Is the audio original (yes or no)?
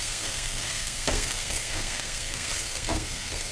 no